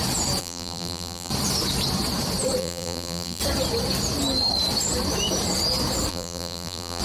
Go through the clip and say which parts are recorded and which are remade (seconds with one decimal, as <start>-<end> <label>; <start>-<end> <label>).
0.0-0.4 recorded; 0.4-1.3 remade; 1.3-2.6 recorded; 2.6-3.4 remade; 3.4-6.1 recorded; 6.1-7.0 remade